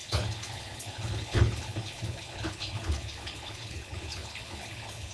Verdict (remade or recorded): remade